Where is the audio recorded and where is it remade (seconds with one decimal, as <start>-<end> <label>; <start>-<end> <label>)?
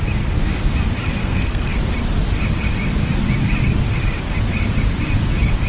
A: 0.0-1.2 recorded; 1.2-1.8 remade; 1.8-5.7 recorded